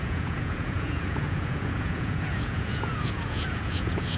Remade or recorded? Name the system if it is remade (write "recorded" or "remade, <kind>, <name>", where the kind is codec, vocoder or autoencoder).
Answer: remade, vocoder, Vocos